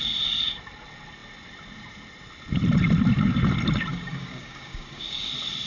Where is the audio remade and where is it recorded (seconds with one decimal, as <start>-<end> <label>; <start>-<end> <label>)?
0.0-3.9 recorded; 3.9-5.3 remade; 5.3-5.7 recorded